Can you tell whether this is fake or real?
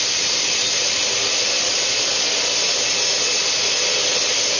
real